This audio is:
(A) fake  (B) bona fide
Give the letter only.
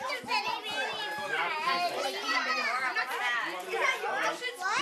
B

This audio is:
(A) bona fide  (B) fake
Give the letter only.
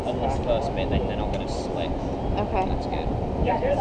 A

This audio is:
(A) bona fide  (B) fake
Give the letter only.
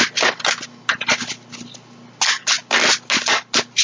A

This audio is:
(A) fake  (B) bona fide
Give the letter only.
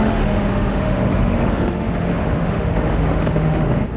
A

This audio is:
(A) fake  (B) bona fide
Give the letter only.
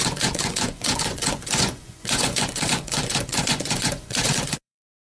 A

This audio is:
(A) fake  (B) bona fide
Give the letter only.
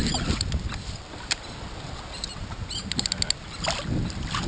B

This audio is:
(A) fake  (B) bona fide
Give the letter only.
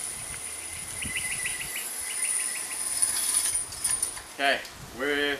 B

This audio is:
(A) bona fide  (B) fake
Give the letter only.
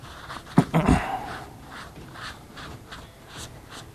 B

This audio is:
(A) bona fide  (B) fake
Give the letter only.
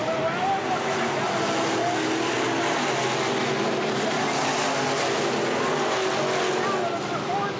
A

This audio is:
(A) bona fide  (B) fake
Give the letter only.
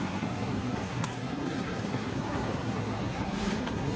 B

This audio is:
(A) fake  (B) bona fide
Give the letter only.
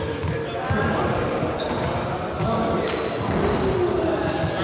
B